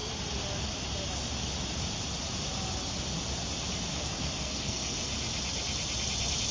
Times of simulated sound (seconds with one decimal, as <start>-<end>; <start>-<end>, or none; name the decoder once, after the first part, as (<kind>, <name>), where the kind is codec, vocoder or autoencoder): 3.9-5.1 (codec, SNAC)